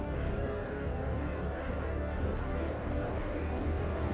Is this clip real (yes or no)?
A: no